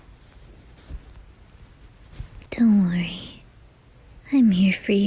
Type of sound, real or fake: real